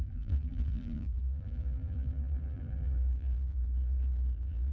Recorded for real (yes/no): no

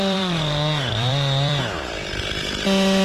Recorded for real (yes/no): no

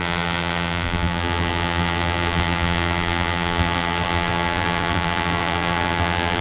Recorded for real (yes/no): no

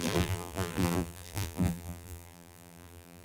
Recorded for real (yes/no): no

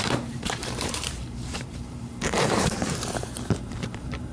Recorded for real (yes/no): no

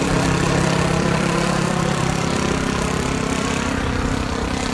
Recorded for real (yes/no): no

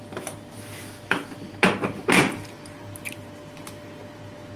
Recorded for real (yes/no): yes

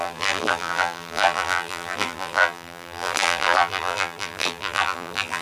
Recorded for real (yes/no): no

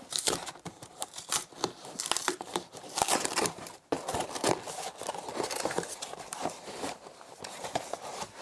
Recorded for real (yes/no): no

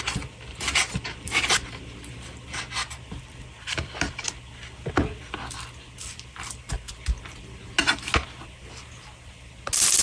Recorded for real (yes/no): yes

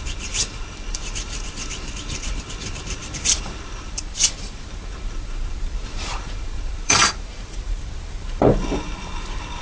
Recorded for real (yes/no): no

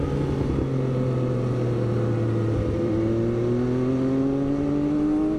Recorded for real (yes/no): yes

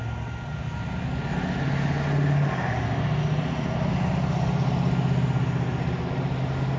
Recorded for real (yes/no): yes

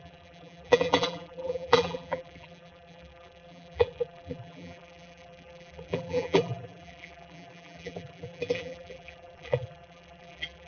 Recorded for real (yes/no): no